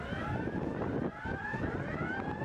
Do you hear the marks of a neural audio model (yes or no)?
no